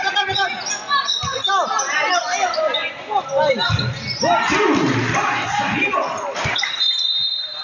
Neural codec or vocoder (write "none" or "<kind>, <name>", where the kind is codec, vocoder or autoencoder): none